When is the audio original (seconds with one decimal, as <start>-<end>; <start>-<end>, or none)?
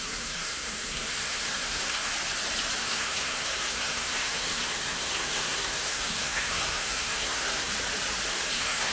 2.1-2.8; 7.7-8.3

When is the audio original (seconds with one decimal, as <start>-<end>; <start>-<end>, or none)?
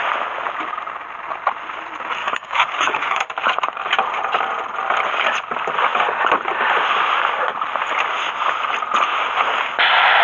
0.0-2.2; 3.3-10.2